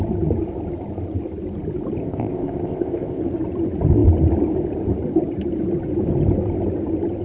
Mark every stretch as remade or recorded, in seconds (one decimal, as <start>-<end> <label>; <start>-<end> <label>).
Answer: 0.0-2.0 recorded; 2.0-3.2 remade; 3.2-7.2 recorded